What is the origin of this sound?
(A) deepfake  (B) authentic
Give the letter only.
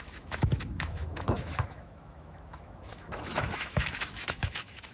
A